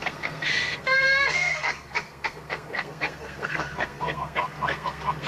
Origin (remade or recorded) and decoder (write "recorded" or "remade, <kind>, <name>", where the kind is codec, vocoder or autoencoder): remade, codec, SNAC